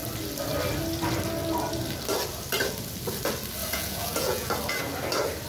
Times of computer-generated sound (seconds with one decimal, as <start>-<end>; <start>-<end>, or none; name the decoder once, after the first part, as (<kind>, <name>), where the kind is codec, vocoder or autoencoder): 3.6-4.5 (vocoder, Vocos)